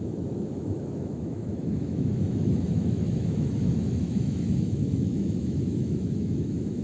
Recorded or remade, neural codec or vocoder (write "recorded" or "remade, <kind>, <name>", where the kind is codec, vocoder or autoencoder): remade, autoencoder, DAC-VAE